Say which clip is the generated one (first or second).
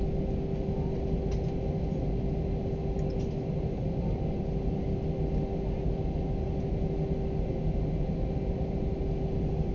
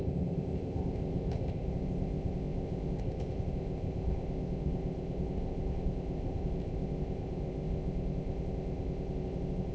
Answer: second